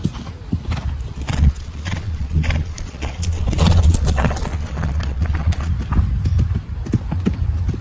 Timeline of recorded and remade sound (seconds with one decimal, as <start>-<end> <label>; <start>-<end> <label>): 0.0-1.1 recorded; 1.1-5.7 remade; 5.7-7.8 recorded